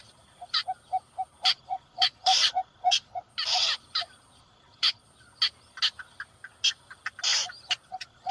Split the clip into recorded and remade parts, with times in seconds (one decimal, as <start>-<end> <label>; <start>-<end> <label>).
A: 0.0-1.5 recorded; 1.5-3.3 remade; 3.3-4.4 recorded; 4.4-5.0 remade; 5.0-7.9 recorded; 7.9-8.3 remade